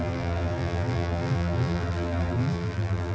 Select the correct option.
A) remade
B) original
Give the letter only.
A